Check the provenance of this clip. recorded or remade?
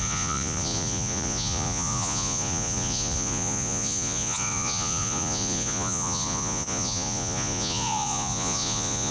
remade